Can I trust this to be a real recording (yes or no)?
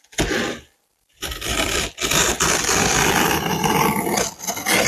no